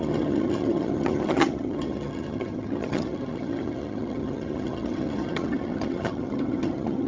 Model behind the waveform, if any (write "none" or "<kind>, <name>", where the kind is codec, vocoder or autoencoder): vocoder, HiFi-GAN